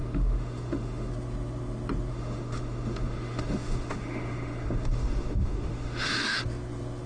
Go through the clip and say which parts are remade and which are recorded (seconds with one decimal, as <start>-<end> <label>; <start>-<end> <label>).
0.0-1.1 remade; 1.1-2.1 recorded; 2.1-6.4 remade; 6.4-7.1 recorded